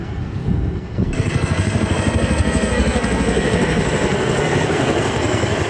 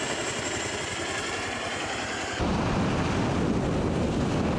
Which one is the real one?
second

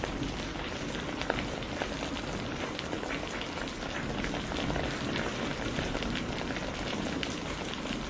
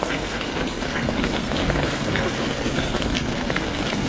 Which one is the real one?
first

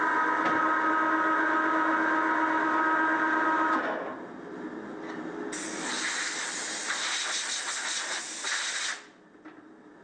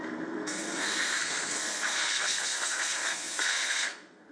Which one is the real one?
first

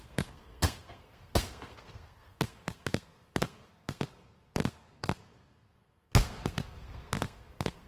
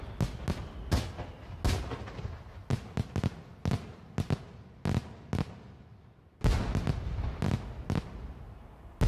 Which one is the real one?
second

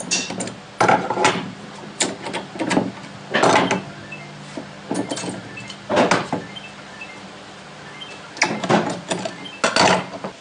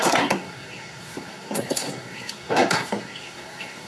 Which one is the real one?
first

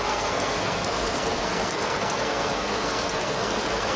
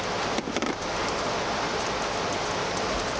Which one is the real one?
second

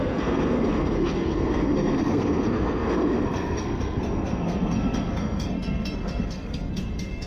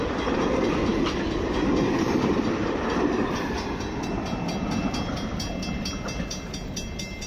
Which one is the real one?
second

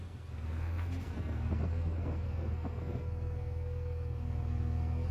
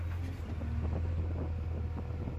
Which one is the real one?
second